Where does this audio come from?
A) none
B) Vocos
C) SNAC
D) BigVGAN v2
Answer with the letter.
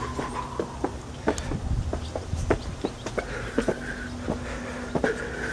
A